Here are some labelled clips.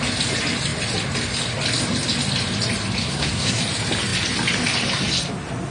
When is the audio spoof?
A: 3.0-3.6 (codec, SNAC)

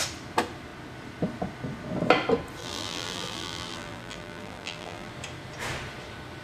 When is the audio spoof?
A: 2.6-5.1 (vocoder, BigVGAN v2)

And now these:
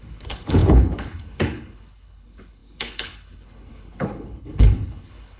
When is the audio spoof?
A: 0.0-5.4 (codec, HILCodec)

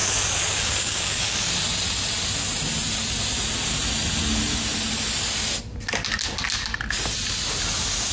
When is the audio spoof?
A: 0.0-1.5 (codec, DAC)

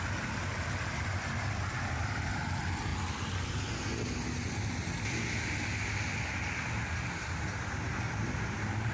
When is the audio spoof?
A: none